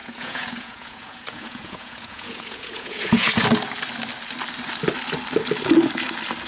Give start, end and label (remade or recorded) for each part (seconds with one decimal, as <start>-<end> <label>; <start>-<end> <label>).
0.0-3.3 remade; 3.3-6.5 recorded